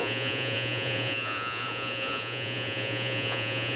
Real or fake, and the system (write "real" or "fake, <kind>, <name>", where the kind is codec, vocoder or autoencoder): fake, vocoder, Vocos